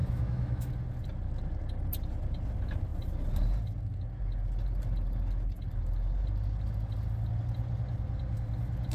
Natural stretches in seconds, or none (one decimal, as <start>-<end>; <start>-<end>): 0.7-8.9